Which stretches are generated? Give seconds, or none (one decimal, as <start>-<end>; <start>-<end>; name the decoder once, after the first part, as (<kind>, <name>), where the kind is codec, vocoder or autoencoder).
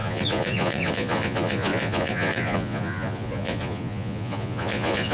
0.0-5.1 (vocoder, Vocos)